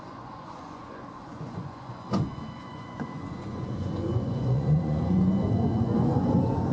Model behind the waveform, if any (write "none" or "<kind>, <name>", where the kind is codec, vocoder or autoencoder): vocoder, Vocos